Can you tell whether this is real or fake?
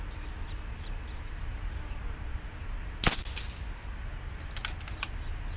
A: real